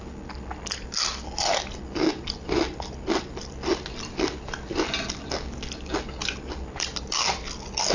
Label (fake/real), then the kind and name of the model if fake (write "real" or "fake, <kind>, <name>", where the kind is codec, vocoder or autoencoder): real